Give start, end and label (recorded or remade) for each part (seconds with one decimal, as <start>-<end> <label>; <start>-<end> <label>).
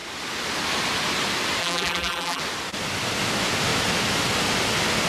0.0-1.6 recorded; 1.6-2.4 remade; 2.4-5.1 recorded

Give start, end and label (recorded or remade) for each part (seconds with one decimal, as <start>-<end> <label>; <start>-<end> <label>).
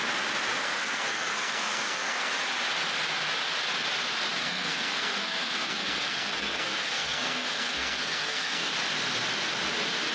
0.0-0.6 recorded; 0.6-2.3 remade; 2.3-4.4 recorded; 4.4-8.7 remade; 8.7-10.1 recorded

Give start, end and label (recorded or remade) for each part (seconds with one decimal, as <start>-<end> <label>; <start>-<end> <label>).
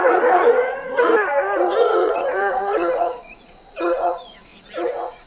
0.0-1.1 remade; 1.1-1.8 recorded; 1.8-5.3 remade